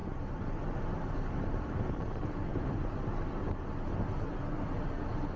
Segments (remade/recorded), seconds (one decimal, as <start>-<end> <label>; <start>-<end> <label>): 0.0-1.8 remade; 1.8-2.5 recorded; 2.5-3.3 remade; 3.3-5.4 recorded